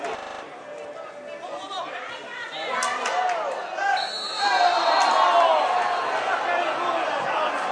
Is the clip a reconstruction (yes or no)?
no